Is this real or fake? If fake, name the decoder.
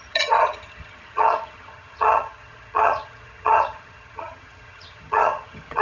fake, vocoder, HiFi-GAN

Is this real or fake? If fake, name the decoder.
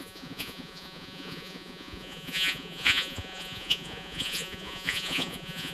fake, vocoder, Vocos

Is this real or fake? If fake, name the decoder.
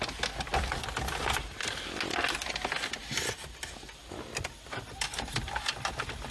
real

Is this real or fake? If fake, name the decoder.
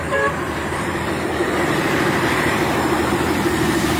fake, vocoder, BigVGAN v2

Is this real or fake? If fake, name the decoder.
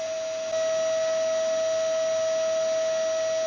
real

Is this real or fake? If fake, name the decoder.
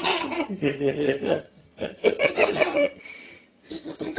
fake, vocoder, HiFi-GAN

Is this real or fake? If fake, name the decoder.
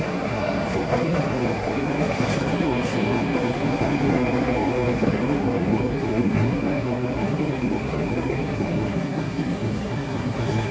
fake, codec, SNAC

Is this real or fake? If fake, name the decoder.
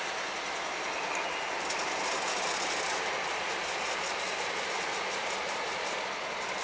real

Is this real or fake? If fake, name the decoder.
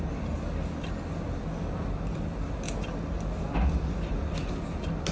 real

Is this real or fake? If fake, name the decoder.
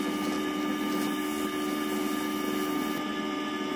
real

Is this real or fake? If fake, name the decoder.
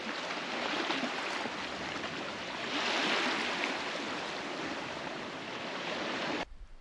real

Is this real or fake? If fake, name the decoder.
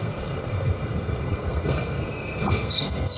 fake, codec, SNAC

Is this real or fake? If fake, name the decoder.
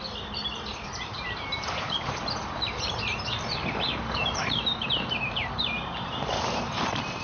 fake, vocoder, BigVGAN v2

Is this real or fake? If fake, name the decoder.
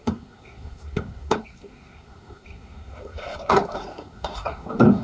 fake, codec, SNAC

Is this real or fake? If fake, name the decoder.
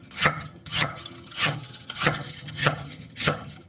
fake, vocoder, HiFi-GAN